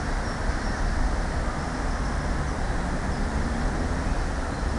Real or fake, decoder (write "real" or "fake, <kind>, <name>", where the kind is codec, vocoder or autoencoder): real